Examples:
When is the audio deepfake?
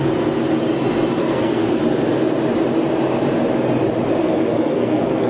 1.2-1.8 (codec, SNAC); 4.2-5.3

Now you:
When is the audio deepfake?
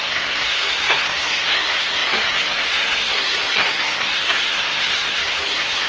0.0-5.9 (codec, SNAC)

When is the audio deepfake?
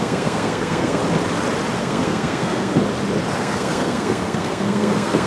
0.0-1.0 (codec, SNAC); 1.8-2.8; 3.4-5.3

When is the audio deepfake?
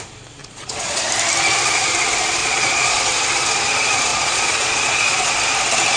0.4-1.0 (vocoder, Vocos); 2.4-3.0; 4.1-5.3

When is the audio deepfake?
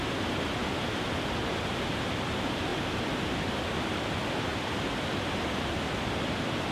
none